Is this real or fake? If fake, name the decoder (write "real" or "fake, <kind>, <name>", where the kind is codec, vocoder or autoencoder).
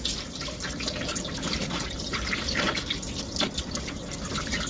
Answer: real